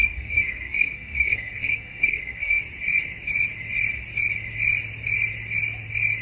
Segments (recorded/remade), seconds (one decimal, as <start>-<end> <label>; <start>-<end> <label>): 0.0-2.6 remade; 2.6-6.2 recorded